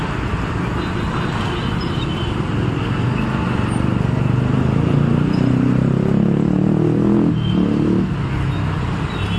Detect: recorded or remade recorded